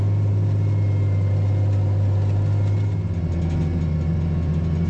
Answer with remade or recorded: recorded